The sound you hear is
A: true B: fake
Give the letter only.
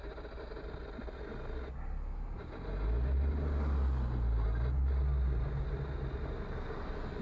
A